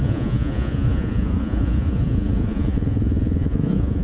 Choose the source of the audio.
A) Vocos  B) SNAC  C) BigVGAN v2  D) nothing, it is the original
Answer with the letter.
A